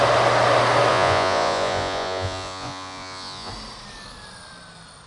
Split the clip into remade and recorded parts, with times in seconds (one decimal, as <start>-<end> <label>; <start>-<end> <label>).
0.0-0.9 recorded; 0.9-3.5 remade; 3.5-5.1 recorded